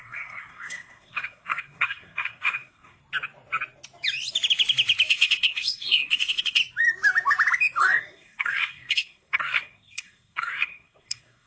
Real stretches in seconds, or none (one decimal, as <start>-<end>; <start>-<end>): 3.0-5.1; 6.6-7.8